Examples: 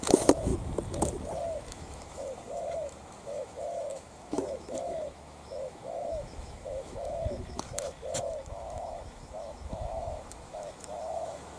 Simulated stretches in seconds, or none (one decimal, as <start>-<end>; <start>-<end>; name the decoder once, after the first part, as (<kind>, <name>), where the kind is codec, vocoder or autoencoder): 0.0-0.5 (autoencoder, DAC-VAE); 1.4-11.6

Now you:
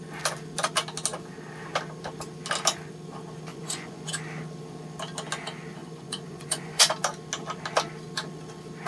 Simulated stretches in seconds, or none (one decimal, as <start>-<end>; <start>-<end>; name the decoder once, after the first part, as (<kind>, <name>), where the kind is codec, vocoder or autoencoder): 3.5-4.1 (vocoder, Vocos); 5.8-6.9

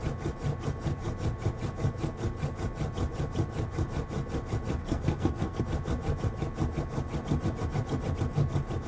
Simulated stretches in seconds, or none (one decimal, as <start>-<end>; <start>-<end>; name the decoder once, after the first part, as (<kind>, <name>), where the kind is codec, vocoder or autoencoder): 4.8-5.6 (codec, SNAC)